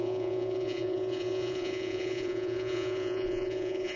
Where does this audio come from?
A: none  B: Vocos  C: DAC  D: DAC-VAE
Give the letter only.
B